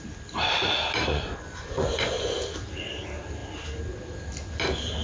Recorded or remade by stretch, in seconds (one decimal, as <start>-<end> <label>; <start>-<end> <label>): 0.0-1.1 recorded; 1.1-2.4 remade; 2.4-5.0 recorded